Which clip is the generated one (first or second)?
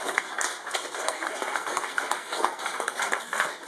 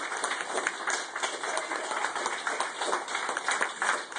first